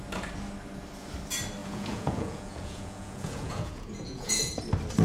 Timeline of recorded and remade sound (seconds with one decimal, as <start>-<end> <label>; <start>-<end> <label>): 0.0-1.6 recorded; 1.6-4.6 remade; 4.6-5.0 recorded